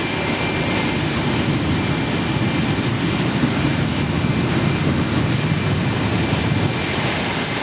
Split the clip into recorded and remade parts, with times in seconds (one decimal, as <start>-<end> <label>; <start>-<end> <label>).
0.0-7.6 recorded